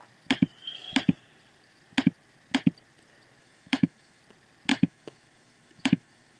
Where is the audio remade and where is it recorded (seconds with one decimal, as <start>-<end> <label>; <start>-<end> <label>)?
0.0-3.4 recorded; 3.4-4.2 remade; 4.2-4.7 recorded; 4.7-6.4 remade